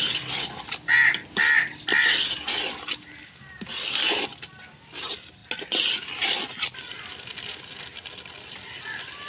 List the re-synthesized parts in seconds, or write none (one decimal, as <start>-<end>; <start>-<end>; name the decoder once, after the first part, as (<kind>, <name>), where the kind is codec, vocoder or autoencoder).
none